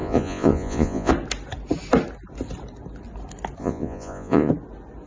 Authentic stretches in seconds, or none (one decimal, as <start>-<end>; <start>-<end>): 1.1-3.6; 4.5-5.1